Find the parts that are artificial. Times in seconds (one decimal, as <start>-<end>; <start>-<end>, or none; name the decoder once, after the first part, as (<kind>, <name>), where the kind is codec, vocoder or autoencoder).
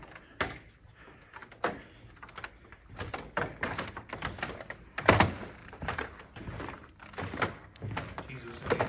2.7-4.1 (vocoder, BigVGAN v2); 5.6-6.9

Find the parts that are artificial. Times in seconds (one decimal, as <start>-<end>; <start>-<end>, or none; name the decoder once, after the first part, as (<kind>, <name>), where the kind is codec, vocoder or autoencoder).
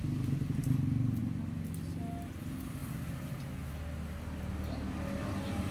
none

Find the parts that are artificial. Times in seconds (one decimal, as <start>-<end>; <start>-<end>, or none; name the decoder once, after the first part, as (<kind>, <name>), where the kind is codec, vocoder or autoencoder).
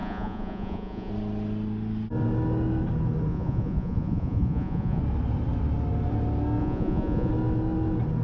0.0-1.1 (vocoder, Vocos); 3.3-5.0; 6.6-7.3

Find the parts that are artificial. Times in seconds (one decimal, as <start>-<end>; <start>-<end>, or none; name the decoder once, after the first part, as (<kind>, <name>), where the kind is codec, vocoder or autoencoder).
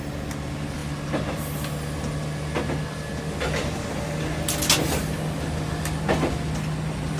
none